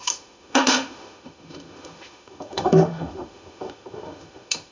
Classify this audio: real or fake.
fake